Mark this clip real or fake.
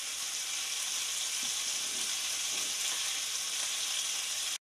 real